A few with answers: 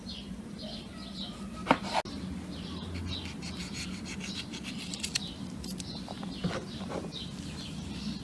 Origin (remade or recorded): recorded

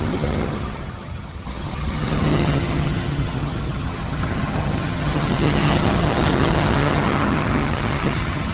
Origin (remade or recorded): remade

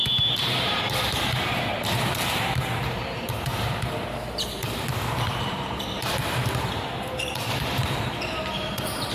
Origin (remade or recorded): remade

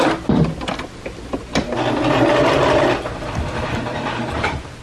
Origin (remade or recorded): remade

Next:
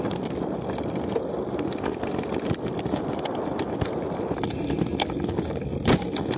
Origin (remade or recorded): recorded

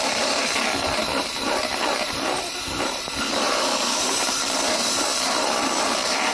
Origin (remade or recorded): remade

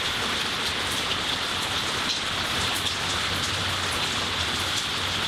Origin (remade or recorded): recorded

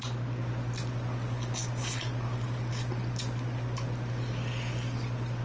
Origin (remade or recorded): recorded